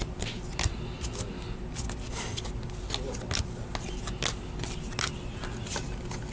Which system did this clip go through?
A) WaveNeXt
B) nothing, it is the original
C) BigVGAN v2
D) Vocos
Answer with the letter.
B